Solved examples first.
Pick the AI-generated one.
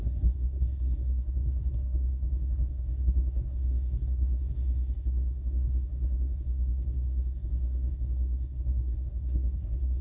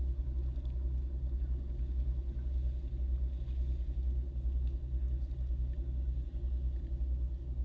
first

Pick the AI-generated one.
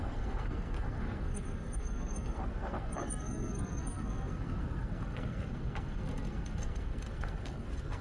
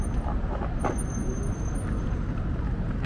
first